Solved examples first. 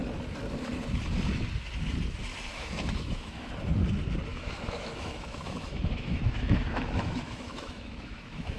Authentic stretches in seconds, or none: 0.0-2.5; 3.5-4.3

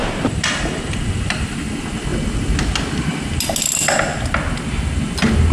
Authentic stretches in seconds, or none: 1.7-5.5